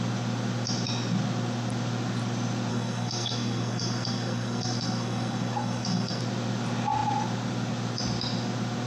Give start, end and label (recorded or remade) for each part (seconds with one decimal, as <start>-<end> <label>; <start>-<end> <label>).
0.0-2.7 recorded; 2.7-6.2 remade; 6.2-8.9 recorded